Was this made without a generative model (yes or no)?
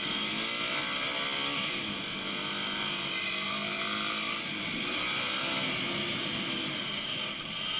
yes